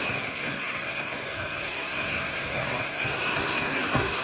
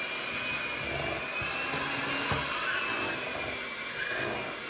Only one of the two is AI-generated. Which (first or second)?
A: first